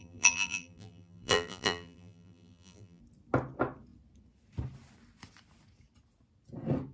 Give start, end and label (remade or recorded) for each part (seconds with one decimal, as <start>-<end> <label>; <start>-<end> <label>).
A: 0.0-3.0 remade; 3.0-6.9 recorded